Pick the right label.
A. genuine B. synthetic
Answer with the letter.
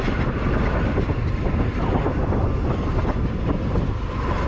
A